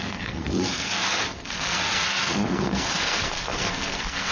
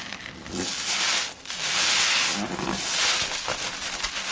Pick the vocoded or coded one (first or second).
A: first